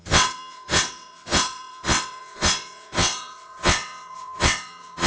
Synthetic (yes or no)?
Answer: yes